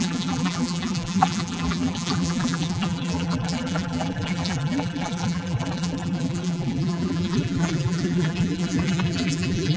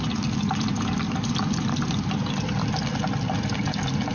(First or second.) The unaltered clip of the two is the second